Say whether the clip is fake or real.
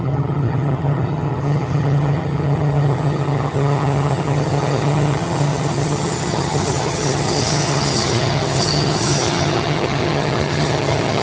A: fake